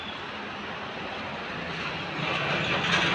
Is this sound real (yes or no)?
yes